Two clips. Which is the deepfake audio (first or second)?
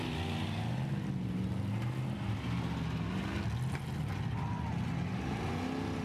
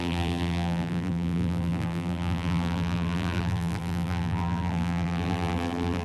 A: second